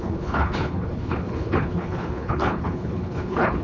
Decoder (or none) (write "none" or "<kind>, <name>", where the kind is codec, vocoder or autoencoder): codec, HILCodec